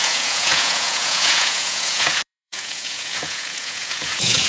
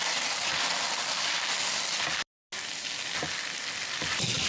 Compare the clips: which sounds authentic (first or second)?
second